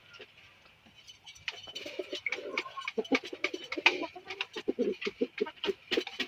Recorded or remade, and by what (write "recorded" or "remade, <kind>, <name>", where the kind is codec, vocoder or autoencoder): recorded